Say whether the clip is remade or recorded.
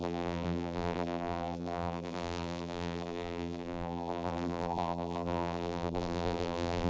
remade